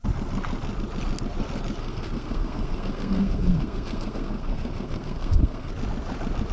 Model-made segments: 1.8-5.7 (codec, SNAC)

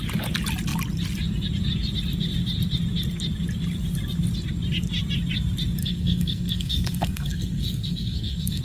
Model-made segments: 5.8-8.6 (codec, SNAC)